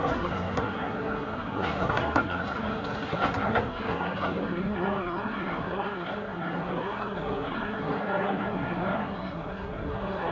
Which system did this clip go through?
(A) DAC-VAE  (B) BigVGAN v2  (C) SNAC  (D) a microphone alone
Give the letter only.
C